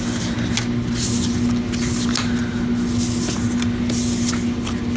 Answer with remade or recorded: recorded